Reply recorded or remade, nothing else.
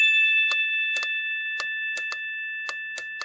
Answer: recorded